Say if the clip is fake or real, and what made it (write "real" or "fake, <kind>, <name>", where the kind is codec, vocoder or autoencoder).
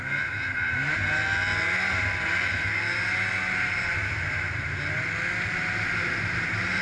real